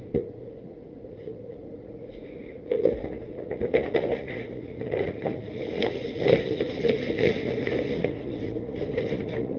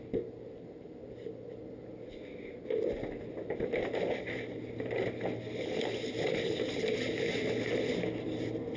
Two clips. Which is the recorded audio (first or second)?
second